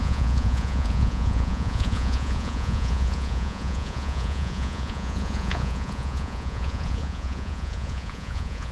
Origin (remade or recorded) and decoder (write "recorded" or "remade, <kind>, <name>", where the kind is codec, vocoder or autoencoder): remade, vocoder, Vocos